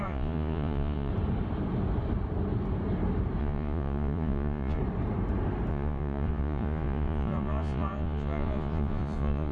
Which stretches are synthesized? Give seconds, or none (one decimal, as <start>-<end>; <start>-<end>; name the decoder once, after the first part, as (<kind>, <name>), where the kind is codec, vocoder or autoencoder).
0.0-1.1 (vocoder, Vocos); 3.4-4.8; 5.7-9.5